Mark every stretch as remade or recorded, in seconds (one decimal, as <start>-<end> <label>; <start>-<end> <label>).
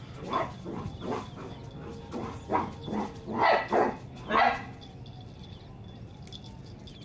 0.0-7.0 recorded